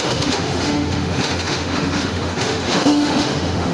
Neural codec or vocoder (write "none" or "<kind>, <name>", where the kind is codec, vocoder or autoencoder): autoencoder, DAC-VAE